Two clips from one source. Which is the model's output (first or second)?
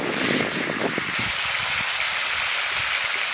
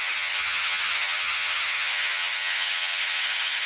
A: second